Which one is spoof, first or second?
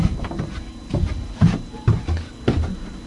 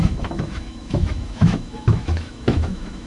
second